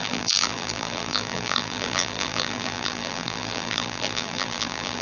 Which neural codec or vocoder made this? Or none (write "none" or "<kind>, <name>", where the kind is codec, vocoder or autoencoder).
vocoder, BigVGAN v2